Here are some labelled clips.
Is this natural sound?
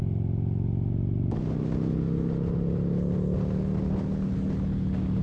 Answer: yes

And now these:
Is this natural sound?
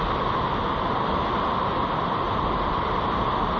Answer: yes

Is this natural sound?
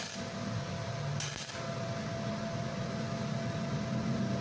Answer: yes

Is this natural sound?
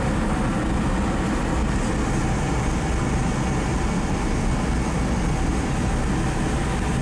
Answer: yes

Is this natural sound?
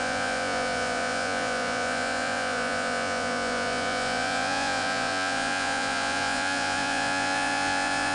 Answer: no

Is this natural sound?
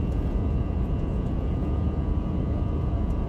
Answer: no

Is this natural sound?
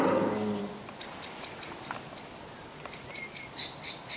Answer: yes